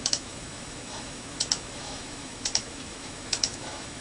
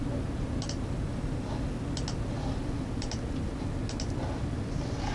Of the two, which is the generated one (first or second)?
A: first